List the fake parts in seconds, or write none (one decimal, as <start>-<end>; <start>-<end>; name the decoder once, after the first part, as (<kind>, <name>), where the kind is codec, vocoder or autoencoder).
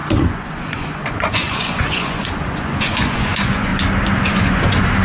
0.0-3.7 (vocoder, Vocos); 4.3-5.0